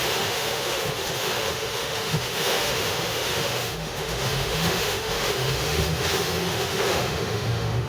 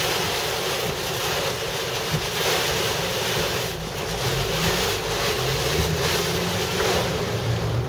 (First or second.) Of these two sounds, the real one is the second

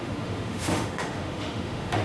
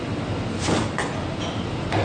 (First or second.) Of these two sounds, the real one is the second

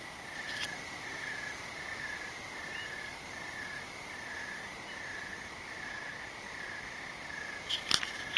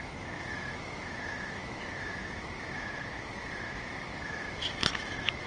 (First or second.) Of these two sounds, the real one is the first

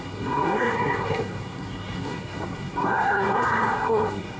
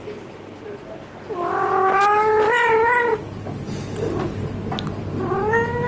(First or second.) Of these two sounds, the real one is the second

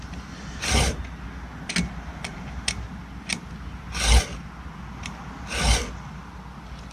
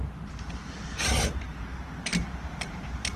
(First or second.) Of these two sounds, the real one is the first